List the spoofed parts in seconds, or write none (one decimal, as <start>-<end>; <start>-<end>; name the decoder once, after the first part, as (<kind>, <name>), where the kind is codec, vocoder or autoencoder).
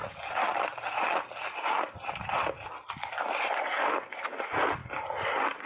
none